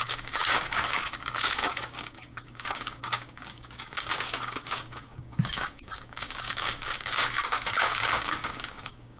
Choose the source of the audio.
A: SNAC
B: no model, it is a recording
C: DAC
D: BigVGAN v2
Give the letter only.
C